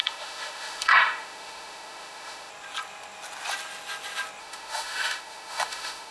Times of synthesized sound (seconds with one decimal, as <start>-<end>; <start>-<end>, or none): 0.0-2.5; 4.4-6.1